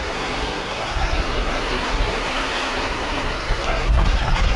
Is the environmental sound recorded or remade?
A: remade